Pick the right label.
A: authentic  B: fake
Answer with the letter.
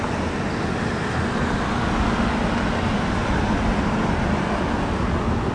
A